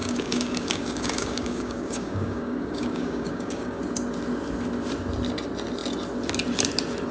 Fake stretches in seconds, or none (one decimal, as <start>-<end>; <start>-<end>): 0.0-3.8